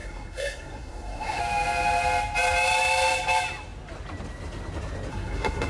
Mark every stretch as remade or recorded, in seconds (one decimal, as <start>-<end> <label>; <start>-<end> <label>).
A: 0.0-1.4 remade; 1.4-5.1 recorded; 5.1-5.7 remade

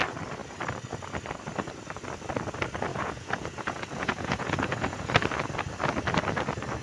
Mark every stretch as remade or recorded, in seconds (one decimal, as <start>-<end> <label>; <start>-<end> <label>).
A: 0.0-2.9 recorded; 2.9-5.0 remade; 5.0-6.8 recorded

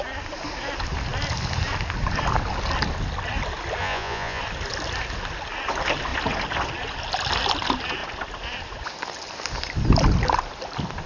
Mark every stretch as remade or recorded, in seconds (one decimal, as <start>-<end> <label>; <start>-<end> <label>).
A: 0.0-3.8 recorded; 3.8-4.4 remade; 4.4-11.1 recorded

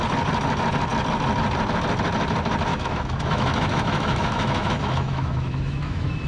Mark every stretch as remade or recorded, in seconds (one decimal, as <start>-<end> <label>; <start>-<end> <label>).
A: 0.0-2.7 recorded; 2.7-6.3 remade

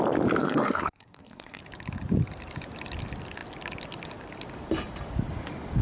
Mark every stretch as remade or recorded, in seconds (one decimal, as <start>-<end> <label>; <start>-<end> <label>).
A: 0.0-0.4 recorded; 0.4-1.6 remade; 1.6-5.8 recorded

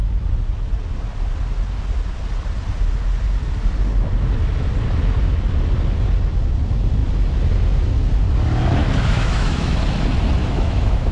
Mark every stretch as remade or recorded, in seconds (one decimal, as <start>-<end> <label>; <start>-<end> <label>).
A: 0.0-8.8 recorded; 8.8-9.8 remade; 9.8-10.4 recorded; 10.4-11.1 remade

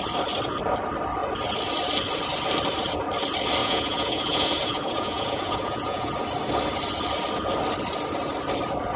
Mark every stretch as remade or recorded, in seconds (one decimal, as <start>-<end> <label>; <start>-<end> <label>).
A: 0.0-3.6 recorded; 3.6-6.1 remade; 6.1-9.0 recorded